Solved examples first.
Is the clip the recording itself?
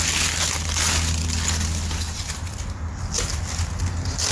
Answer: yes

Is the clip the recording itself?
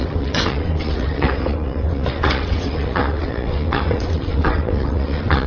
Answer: no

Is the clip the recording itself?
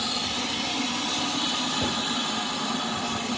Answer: yes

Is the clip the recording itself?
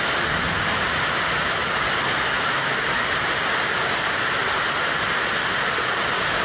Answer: yes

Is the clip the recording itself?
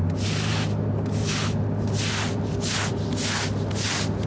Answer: yes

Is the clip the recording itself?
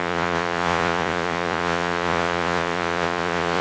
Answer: no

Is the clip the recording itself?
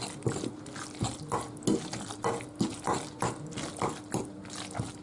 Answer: yes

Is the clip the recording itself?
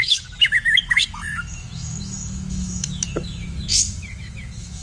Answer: no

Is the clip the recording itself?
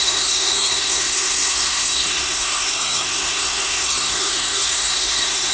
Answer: no